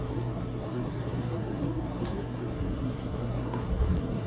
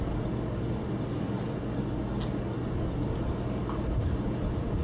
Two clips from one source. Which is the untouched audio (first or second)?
second